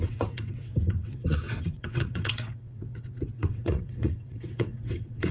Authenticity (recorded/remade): remade